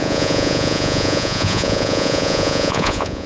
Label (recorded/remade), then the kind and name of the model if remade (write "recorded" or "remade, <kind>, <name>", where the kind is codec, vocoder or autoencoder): remade, vocoder, Vocos